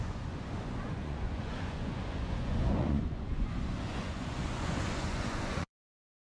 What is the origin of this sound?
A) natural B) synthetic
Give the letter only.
B